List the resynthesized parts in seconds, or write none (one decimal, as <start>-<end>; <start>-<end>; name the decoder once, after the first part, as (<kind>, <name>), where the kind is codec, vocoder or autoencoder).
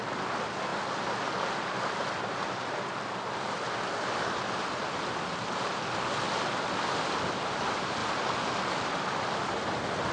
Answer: none